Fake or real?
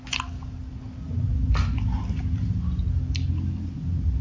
real